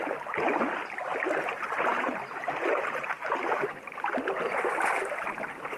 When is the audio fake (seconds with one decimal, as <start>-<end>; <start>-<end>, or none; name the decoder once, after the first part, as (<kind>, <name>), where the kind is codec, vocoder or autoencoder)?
none